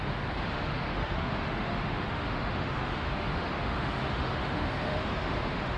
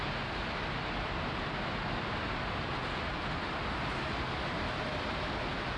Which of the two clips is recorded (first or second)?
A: second